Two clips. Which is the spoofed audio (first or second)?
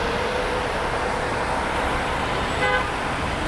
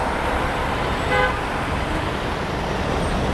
second